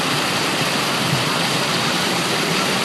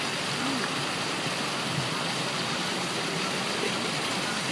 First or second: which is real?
second